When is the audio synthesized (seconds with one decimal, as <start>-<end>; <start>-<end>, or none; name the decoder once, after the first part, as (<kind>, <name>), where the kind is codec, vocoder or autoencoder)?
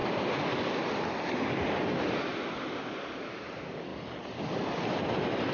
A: 3.3-3.9 (vocoder, BigVGAN v2); 4.9-5.5